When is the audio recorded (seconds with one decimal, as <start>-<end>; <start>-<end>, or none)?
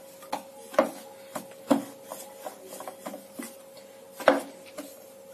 0.0-5.3